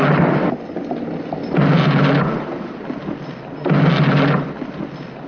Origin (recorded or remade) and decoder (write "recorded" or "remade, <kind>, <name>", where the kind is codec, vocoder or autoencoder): recorded